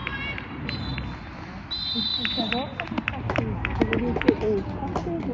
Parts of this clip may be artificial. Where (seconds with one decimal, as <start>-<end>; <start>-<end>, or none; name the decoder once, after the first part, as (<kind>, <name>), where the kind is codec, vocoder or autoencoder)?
0.0-0.8 (vocoder, BigVGAN v2)